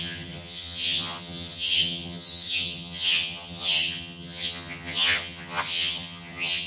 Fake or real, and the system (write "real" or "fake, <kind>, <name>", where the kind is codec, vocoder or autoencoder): fake, vocoder, HiFi-GAN